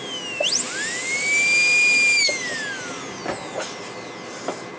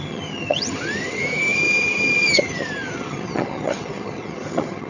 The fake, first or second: second